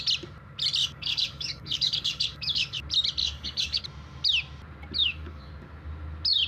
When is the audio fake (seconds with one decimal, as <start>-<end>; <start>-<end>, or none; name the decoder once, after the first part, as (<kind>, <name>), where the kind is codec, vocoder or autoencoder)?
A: 0.8-2.8 (codec, DAC); 3.2-3.8; 5.0-5.5